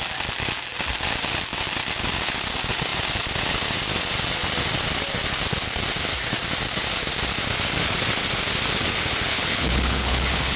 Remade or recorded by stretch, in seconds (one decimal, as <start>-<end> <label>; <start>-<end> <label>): 0.0-9.3 recorded; 9.3-10.6 remade